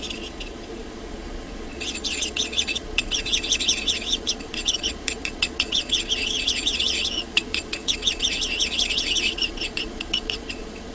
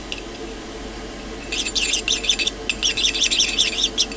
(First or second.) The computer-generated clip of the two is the first